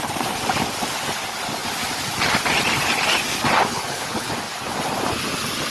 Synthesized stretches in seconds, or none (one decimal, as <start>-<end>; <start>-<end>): 3.7-4.3